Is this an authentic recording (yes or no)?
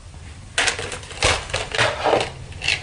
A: yes